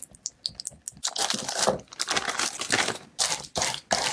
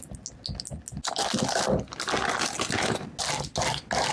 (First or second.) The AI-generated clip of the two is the first